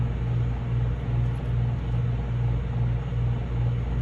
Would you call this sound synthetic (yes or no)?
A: no